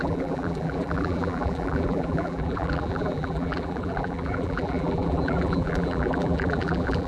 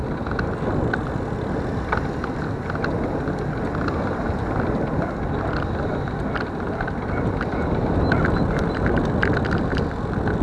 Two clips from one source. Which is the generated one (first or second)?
first